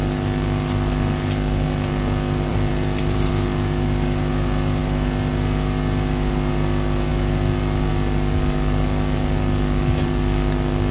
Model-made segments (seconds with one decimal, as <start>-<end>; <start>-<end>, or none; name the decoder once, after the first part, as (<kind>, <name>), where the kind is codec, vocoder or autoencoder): 2.5-3.3 (vocoder, BigVGAN v2)